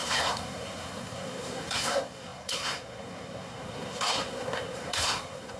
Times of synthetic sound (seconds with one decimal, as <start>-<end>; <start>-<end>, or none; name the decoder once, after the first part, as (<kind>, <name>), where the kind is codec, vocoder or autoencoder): 0.0-5.6 (codec, SNAC)